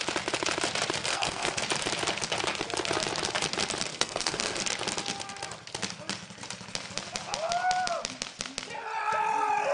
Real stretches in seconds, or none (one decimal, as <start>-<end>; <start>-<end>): 0.0-1.1; 1.6-3.9; 4.6-9.7